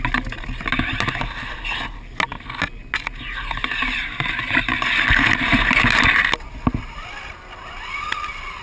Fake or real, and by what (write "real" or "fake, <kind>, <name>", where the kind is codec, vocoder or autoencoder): real